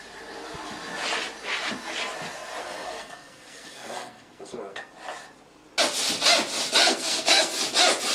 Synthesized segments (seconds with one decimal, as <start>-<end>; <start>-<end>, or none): 2.6-4.9; 6.8-7.6